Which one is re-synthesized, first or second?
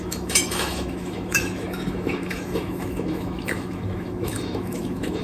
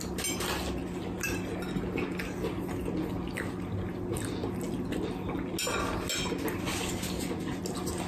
first